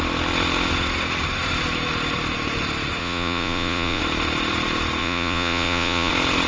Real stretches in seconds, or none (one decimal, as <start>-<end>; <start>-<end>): 0.0-3.0; 4.0-5.0; 6.1-6.5